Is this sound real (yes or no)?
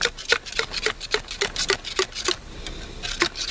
yes